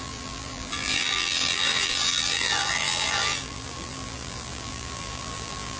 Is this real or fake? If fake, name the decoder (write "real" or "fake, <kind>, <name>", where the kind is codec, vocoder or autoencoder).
fake, vocoder, BigVGAN v2